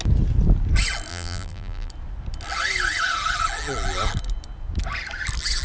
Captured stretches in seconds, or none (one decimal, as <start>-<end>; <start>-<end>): 0.0-1.1; 1.9-5.6